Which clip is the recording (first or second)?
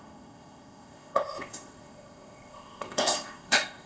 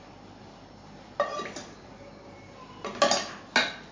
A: second